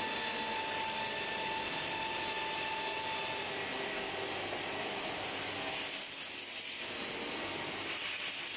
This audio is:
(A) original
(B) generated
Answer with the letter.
A